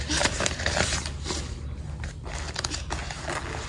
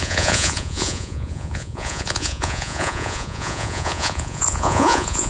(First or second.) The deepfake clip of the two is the second